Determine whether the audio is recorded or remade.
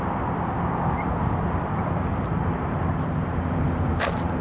recorded